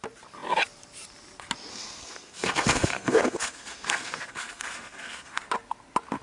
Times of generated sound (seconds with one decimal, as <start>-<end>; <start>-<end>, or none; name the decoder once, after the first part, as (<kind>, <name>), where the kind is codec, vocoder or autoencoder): 1.7-5.4 (codec, SNAC)